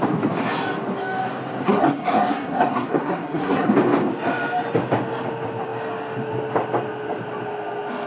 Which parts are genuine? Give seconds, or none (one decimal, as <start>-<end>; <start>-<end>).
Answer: 0.0-1.6; 3.7-8.1